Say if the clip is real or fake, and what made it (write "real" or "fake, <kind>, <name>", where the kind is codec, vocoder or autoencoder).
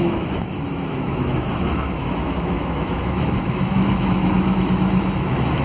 fake, autoencoder, DAC-VAE